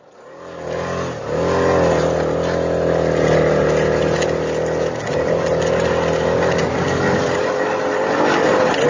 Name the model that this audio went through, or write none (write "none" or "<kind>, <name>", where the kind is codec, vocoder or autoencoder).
none